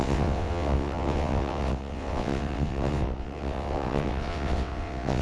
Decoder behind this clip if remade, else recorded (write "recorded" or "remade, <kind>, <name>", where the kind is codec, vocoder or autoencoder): remade, vocoder, WaveNeXt